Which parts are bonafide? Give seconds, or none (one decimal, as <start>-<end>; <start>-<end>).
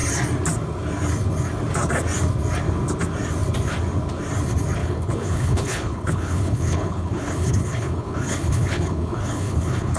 0.0-4.8